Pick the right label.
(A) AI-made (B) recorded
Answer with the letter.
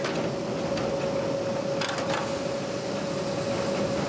B